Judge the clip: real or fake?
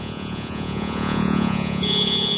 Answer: fake